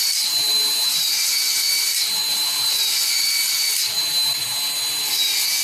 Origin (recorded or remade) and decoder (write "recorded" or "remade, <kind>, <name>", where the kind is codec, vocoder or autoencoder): recorded